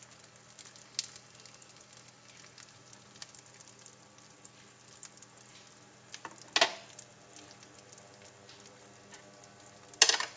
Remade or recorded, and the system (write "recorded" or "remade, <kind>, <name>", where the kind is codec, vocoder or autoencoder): recorded